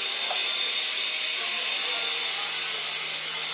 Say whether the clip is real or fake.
real